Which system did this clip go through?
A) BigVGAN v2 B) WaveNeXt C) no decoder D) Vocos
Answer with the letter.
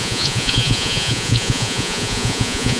D